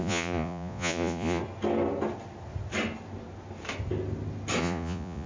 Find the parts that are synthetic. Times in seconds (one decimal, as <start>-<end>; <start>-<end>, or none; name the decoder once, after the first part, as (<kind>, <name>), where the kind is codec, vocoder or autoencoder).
0.0-1.4 (vocoder, Vocos); 4.6-5.3